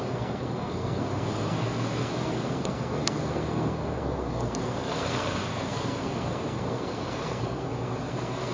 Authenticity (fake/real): fake